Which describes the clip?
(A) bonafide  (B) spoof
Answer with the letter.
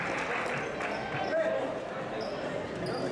A